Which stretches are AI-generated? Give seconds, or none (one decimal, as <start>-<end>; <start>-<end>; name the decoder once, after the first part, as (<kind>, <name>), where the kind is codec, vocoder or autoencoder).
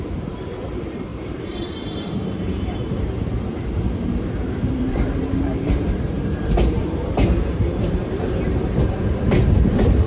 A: 0.0-10.1 (vocoder, BigVGAN v2)